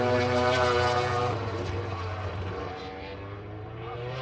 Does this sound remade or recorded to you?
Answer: remade